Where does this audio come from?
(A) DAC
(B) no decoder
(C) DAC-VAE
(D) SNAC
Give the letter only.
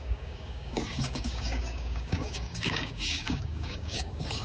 A